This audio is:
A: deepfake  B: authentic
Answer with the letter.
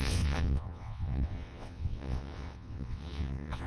A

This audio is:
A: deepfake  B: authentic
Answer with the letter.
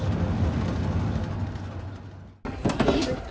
B